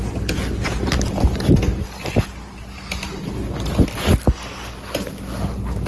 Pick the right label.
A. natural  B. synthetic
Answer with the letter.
A